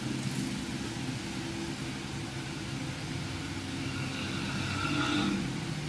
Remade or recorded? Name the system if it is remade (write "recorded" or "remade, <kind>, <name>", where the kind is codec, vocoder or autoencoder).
recorded